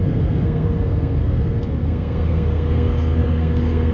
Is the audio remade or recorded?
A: remade